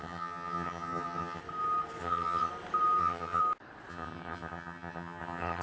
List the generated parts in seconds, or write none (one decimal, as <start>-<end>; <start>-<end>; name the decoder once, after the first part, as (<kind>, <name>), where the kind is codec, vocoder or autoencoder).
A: 0.0-1.4 (vocoder, HiFi-GAN); 2.0-2.5; 3.0-3.4; 3.9-5.6